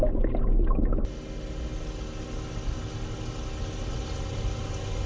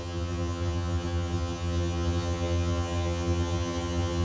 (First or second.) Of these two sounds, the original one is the first